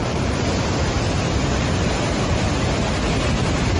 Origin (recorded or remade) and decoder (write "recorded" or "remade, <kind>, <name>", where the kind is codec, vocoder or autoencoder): recorded